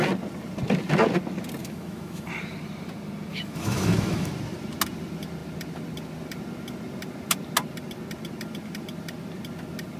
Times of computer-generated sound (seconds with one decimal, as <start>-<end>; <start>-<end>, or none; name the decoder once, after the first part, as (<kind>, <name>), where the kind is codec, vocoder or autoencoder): 1.6-2.3 (autoencoder, DAC-VAE); 3.3-4.3